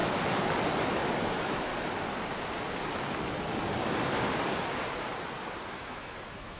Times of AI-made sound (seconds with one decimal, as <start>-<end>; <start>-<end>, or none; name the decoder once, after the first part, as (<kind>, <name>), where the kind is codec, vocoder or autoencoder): 0.8-1.7 (autoencoder, DAC-VAE); 5.7-6.6